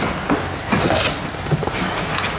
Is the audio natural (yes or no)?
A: yes